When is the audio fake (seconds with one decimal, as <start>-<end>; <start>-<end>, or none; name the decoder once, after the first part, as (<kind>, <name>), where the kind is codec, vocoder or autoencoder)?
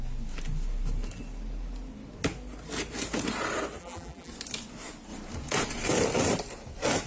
3.8-4.3 (vocoder, BigVGAN v2)